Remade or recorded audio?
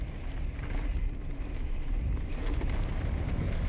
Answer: recorded